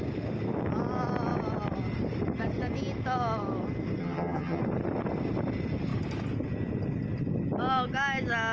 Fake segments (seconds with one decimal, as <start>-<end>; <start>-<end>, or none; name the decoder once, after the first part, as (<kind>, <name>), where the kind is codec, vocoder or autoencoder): 4.0-4.6 (vocoder, HiFi-GAN)